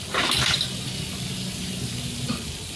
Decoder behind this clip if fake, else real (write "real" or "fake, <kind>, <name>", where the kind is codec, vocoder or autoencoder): real